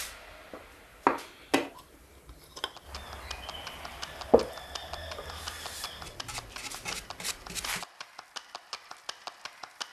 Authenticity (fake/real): real